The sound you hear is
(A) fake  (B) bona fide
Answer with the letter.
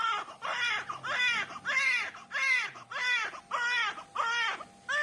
B